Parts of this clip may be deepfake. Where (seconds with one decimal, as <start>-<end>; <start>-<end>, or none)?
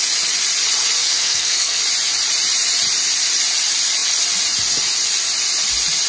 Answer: 1.0-1.8